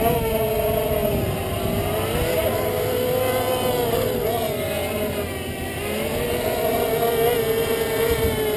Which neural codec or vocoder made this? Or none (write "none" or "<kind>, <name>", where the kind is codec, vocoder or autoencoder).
none